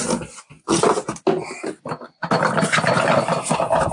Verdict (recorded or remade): recorded